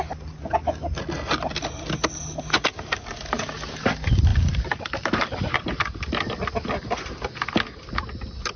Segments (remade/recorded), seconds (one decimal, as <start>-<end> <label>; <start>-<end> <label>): 0.0-4.3 recorded; 4.3-5.7 remade; 5.7-8.6 recorded